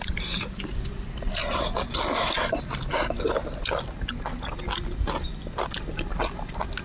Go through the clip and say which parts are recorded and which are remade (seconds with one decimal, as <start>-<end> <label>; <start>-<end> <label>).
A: 0.0-6.8 recorded